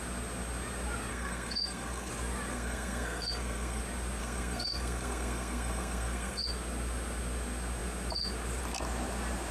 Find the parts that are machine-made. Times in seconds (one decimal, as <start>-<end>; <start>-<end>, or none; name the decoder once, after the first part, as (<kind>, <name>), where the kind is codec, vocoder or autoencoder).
1.1-2.1 (codec, SNAC); 2.5-3.8; 4.2-6.4